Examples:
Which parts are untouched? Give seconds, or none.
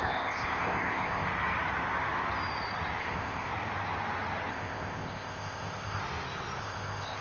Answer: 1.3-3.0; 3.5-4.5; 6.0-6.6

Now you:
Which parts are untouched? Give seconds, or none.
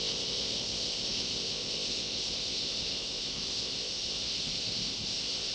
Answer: none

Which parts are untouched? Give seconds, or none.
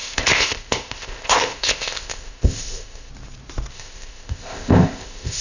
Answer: 3.1-3.7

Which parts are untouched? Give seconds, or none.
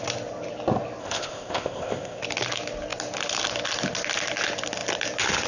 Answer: 0.0-1.0; 2.2-5.5